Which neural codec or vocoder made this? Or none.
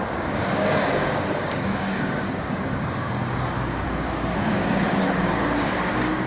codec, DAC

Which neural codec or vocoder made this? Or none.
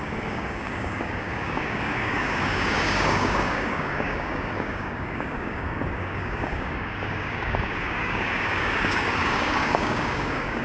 codec, DAC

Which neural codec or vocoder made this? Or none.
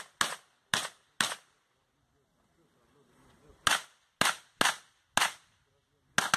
none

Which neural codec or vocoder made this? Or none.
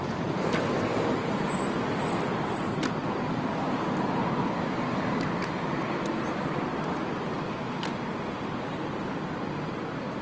vocoder, BigVGAN v2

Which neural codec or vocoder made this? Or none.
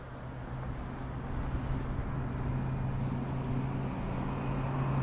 none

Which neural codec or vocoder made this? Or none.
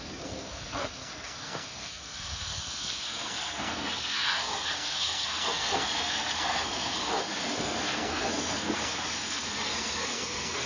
codec, SNAC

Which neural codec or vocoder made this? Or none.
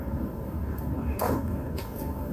codec, DAC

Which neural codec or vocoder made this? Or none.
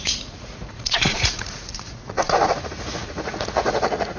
vocoder, Vocos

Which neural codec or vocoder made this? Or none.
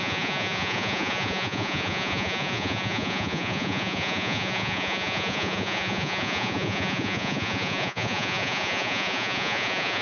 vocoder, Vocos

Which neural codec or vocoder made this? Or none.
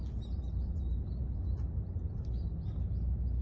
none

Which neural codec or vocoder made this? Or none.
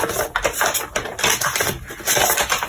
none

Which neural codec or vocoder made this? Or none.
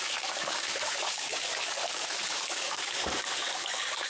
codec, DAC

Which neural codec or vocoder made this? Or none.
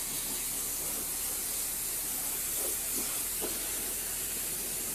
none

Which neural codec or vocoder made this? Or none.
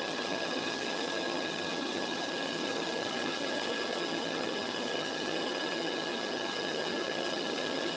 vocoder, HiFi-GAN